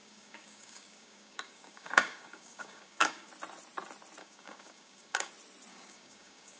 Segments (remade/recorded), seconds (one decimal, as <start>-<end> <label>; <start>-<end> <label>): 0.0-3.3 remade; 3.3-4.2 recorded; 4.2-5.3 remade; 5.3-5.7 recorded; 5.7-6.6 remade